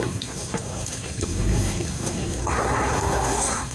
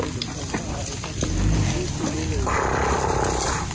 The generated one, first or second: first